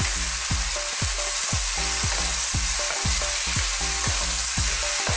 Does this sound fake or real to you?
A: real